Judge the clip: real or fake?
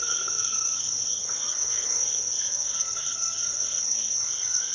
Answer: fake